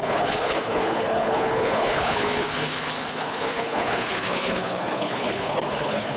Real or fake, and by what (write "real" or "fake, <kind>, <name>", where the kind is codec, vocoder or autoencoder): fake, codec, HILCodec